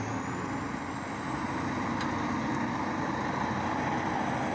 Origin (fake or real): real